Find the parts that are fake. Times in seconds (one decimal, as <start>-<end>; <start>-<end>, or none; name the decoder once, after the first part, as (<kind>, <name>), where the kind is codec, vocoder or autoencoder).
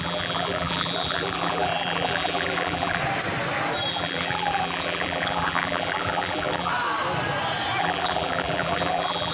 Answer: 0.0-3.0 (vocoder, BigVGAN v2); 3.9-6.7; 7.8-9.3